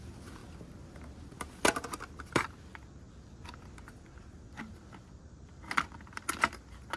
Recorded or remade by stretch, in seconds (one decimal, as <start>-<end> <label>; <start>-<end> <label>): 0.0-7.0 recorded